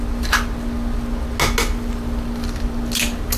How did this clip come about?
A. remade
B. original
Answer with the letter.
B